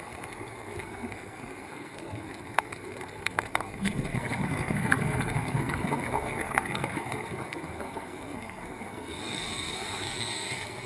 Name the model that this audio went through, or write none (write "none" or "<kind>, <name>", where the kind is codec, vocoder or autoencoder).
codec, SNAC